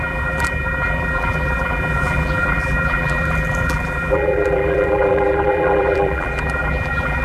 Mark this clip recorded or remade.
remade